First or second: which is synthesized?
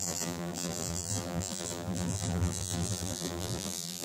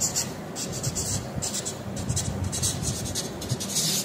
first